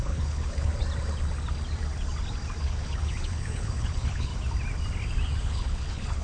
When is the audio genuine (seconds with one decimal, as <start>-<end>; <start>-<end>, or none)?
0.7-2.6; 4.3-5.4